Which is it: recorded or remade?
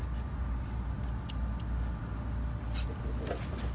recorded